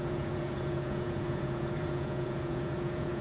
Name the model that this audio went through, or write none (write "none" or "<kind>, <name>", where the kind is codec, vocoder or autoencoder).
vocoder, Vocos